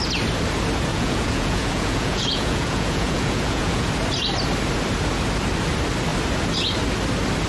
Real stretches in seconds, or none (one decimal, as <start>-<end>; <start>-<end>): 0.0-0.9; 3.9-7.5